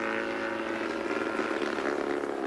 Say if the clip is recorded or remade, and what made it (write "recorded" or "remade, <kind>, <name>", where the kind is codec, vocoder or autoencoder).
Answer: recorded